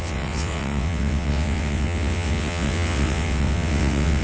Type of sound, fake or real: fake